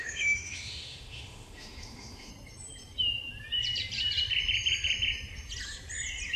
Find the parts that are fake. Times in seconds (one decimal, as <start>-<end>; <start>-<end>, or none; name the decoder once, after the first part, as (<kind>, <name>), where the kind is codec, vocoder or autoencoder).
0.0-2.3 (autoencoder, DAC-VAE)